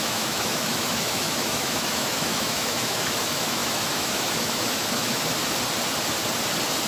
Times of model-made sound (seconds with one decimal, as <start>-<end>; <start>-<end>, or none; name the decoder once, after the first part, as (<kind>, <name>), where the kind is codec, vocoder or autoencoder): 0.0-5.4 (autoencoder, DAC-VAE)